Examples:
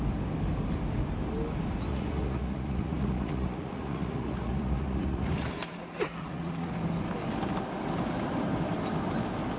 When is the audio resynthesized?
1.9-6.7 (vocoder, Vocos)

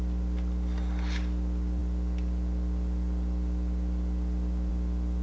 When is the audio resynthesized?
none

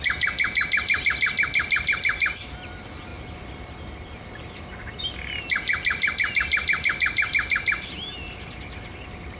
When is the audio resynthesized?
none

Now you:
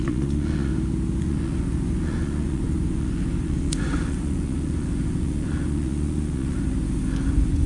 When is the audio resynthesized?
0.0-0.7 (vocoder, Vocos); 1.2-7.7

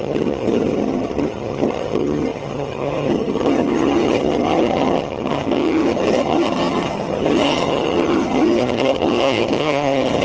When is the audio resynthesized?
0.0-10.2 (vocoder, HiFi-GAN)

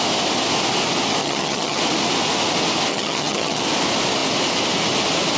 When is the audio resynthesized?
1.2-1.8 (vocoder, HiFi-GAN); 2.9-3.6

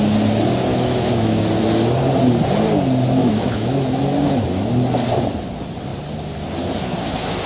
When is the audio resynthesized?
0.7-1.4 (autoencoder, DAC-VAE); 3.2-4.0

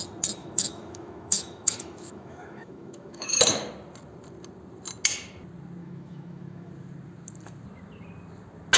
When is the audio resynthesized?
0.4-3.4 (autoencoder, DAC-VAE); 5.8-6.7